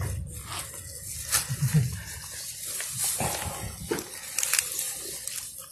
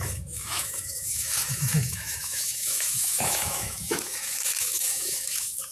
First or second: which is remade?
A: second